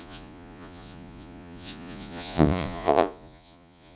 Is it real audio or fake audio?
fake